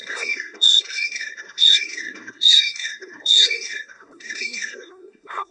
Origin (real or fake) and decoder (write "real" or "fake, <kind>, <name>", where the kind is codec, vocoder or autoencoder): fake, codec, SNAC